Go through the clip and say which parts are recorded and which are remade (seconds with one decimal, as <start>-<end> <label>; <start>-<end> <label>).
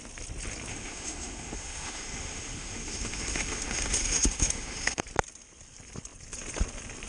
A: 0.0-0.7 recorded; 0.7-5.0 remade; 5.0-7.1 recorded